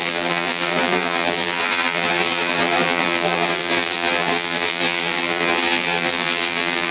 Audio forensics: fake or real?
fake